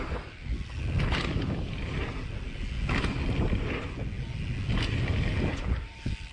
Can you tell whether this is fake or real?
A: real